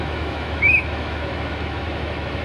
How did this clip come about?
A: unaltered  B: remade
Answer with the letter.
B